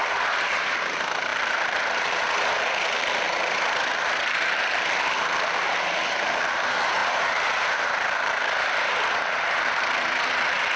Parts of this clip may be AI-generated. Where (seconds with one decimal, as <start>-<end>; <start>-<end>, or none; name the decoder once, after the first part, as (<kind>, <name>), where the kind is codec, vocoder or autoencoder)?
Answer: 0.0-10.8 (vocoder, BigVGAN v2)